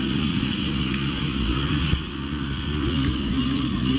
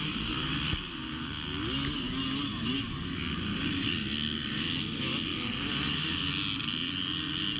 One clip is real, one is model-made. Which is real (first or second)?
second